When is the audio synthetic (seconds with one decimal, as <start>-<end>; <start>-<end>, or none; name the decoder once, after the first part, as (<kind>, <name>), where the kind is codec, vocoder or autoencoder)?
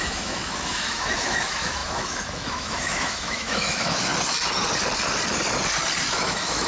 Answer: 0.0-4.1 (autoencoder, DAC-VAE); 6.1-6.7